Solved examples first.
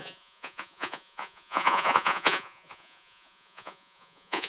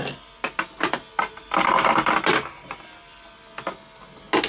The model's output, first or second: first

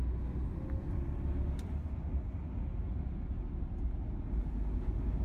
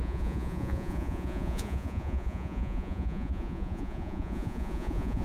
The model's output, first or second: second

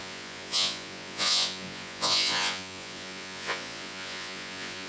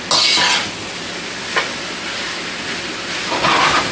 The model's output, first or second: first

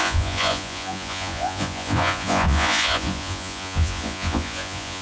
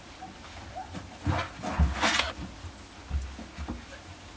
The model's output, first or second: first